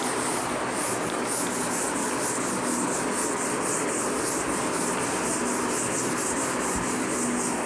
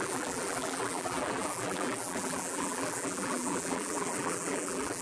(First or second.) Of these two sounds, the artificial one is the second